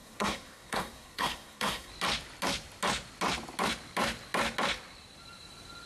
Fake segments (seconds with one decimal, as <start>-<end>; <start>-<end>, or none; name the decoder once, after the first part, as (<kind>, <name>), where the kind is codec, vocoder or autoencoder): 0.0-1.9 (codec, SNAC)